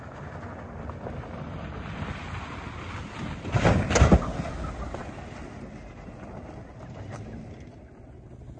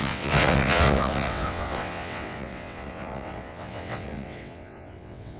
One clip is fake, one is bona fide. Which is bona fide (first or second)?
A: first